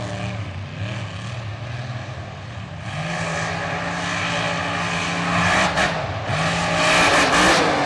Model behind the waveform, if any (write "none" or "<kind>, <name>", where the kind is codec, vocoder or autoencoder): none